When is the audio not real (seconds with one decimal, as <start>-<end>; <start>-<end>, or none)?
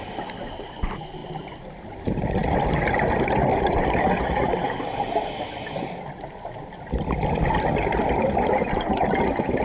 none